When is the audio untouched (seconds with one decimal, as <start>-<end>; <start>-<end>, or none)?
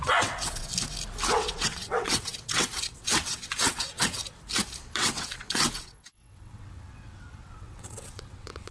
0.7-1.3; 4.2-4.8